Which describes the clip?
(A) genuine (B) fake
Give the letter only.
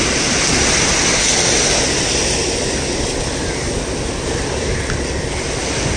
A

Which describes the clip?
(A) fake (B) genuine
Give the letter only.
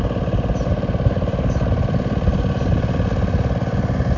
B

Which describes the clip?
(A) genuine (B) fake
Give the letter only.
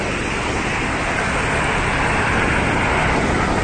A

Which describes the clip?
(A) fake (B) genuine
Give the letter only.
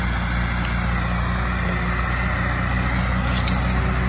B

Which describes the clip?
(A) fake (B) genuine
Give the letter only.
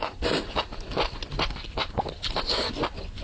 B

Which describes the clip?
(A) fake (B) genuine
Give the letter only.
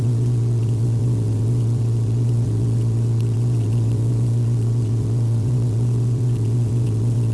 A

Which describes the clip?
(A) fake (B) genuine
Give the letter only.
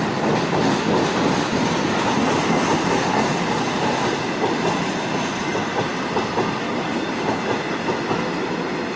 B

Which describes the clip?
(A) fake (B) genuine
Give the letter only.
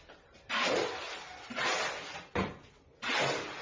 B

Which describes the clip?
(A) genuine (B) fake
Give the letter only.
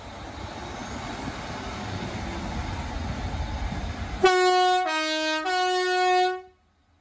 A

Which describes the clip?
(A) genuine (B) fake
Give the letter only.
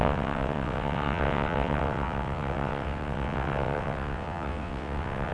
B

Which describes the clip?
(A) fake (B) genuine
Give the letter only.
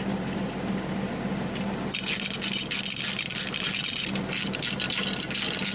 B